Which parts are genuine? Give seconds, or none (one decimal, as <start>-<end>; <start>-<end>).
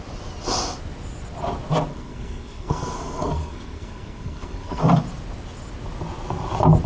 0.0-1.9; 4.8-6.9